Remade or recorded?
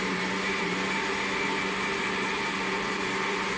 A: recorded